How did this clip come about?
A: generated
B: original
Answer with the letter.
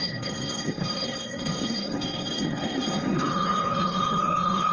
A